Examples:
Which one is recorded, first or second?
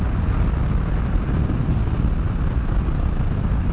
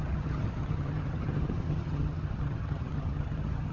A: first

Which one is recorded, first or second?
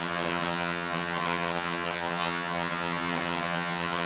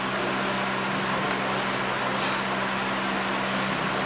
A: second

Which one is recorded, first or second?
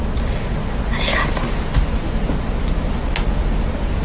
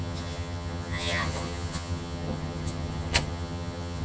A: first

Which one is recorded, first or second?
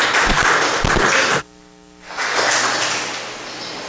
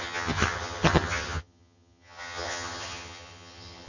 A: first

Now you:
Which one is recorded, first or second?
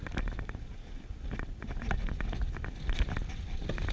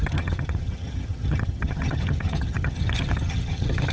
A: first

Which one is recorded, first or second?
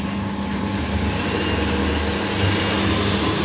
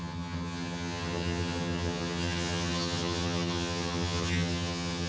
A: first